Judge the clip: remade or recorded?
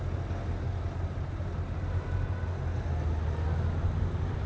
recorded